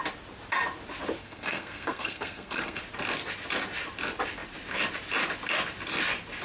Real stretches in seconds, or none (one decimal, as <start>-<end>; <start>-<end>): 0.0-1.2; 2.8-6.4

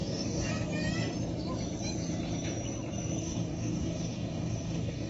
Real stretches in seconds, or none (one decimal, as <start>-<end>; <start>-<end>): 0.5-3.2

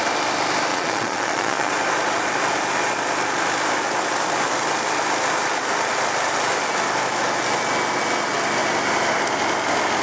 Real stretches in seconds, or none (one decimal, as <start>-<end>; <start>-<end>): 0.0-0.7; 1.7-10.0

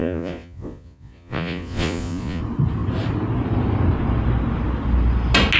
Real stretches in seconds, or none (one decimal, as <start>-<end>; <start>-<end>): 2.4-5.6